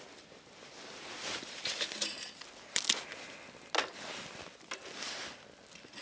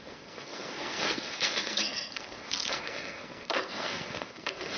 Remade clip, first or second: second